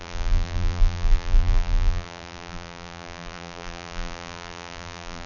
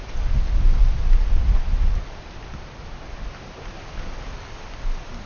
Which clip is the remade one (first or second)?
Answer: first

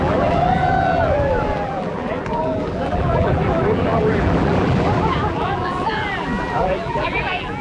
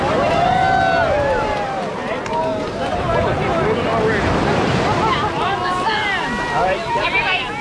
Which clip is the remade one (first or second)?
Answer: first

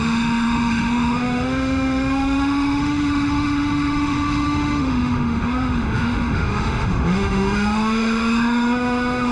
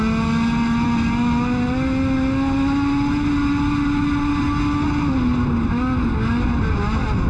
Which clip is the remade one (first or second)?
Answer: first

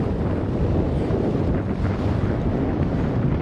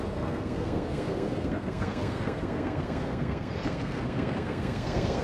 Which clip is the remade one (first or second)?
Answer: second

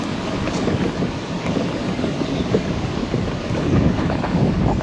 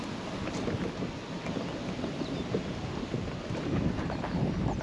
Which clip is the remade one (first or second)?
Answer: first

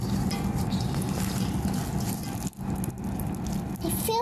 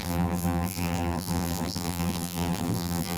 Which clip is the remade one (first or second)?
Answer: second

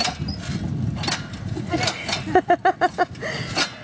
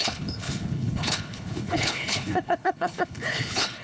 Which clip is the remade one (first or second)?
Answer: second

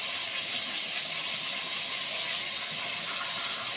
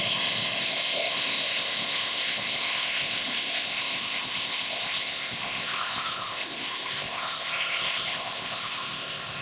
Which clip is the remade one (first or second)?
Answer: second